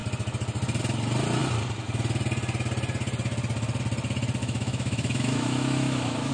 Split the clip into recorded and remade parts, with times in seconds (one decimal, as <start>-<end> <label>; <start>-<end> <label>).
0.0-4.4 recorded; 4.4-6.3 remade